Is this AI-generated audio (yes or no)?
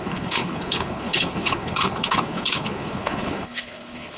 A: yes